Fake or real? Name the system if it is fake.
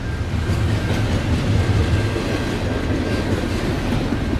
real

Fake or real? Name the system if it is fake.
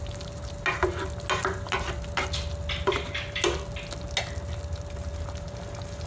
real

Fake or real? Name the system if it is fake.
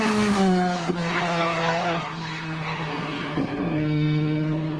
fake, codec, SNAC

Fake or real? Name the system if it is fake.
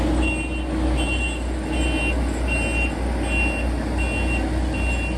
real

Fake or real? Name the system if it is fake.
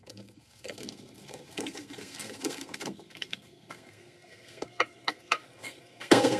fake, codec, SNAC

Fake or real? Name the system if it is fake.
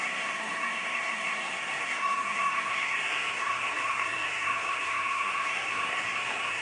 fake, codec, SNAC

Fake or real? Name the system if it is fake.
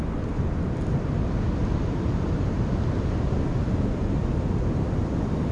real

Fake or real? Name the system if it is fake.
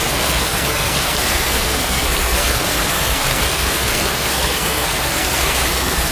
fake, codec, SNAC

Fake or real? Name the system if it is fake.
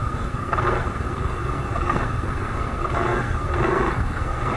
fake, codec, SNAC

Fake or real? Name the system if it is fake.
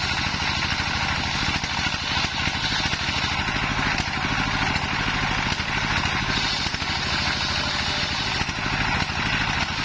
real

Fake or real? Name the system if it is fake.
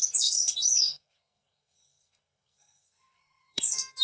fake, codec, SNAC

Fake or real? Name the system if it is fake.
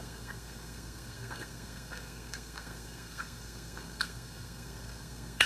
fake, codec, SNAC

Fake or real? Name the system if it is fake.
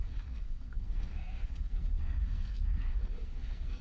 fake, codec, SNAC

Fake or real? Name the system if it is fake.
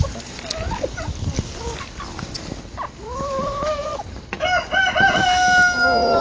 real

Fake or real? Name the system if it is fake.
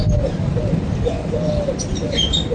real